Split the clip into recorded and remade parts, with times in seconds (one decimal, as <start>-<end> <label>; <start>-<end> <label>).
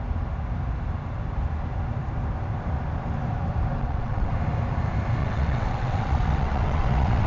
0.0-3.8 recorded; 3.8-4.3 remade; 4.3-5.2 recorded; 5.2-7.3 remade